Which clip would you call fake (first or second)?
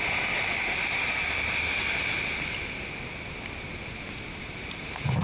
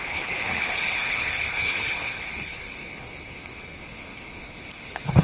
second